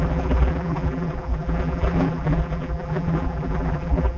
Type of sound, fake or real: fake